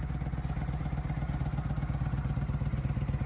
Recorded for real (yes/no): yes